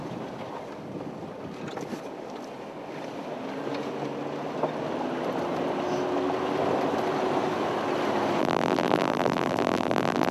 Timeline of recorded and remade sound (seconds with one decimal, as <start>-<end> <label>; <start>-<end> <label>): 0.0-8.4 recorded; 8.4-10.3 remade